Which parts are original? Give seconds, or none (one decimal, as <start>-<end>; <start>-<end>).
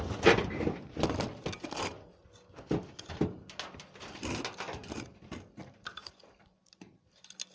0.0-7.5